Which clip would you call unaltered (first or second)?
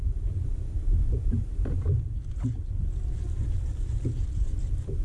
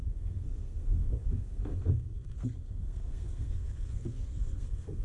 first